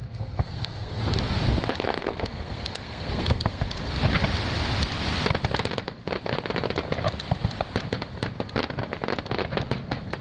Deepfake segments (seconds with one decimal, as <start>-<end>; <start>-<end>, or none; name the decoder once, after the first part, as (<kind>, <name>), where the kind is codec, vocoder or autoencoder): 0.0-1.0 (codec, SNAC); 2.0-3.9